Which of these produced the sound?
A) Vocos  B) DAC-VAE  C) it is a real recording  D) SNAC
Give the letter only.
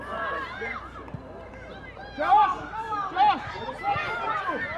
C